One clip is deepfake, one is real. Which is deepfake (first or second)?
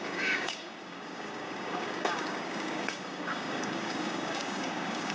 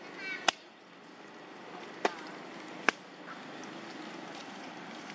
first